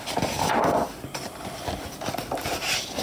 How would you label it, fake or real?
real